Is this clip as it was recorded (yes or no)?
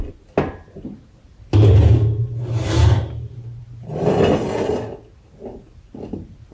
yes